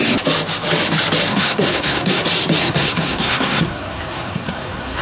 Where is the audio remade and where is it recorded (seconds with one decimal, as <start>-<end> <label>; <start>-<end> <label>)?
0.0-1.3 recorded; 1.3-2.2 remade; 2.2-2.6 recorded; 2.6-5.0 remade